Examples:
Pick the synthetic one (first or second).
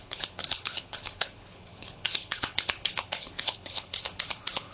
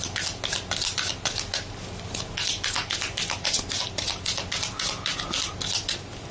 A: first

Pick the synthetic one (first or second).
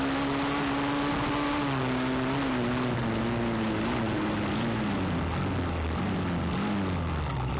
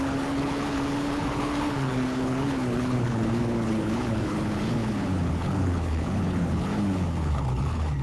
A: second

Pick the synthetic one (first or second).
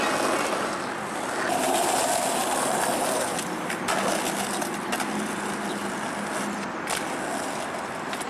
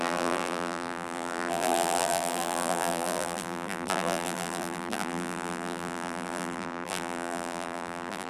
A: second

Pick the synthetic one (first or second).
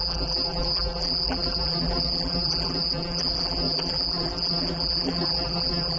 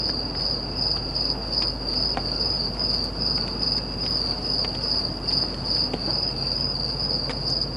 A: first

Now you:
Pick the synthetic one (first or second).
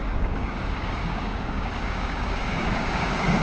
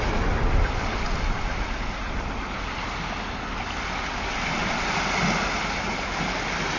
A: first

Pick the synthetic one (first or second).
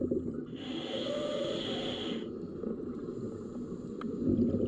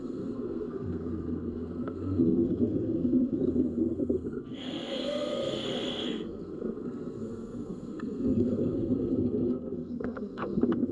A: second